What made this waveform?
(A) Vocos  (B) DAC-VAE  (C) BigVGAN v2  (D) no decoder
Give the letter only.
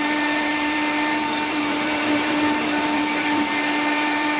C